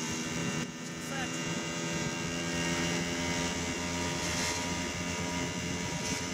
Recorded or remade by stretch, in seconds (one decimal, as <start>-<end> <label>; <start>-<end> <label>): 0.0-0.4 recorded; 0.4-2.1 remade; 2.1-6.3 recorded